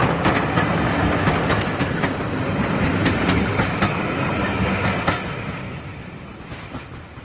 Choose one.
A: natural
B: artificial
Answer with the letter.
A